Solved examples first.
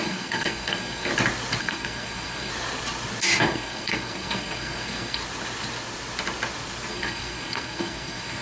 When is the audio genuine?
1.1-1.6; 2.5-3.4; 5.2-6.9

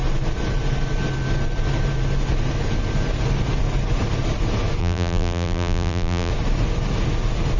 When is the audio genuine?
0.0-4.8; 6.3-7.6

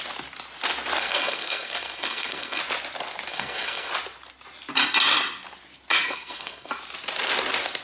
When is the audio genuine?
0.0-1.0; 2.6-3.3; 3.9-5.9; 6.7-7.8

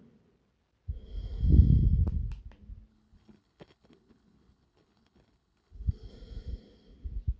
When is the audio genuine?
0.0-2.9; 6.1-7.4

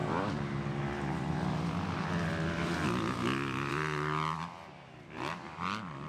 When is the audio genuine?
0.0-6.1